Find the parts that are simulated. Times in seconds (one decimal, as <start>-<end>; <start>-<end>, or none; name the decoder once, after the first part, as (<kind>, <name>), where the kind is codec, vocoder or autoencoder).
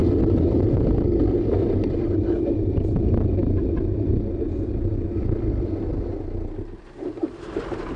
0.0-2.1 (vocoder, BigVGAN v2)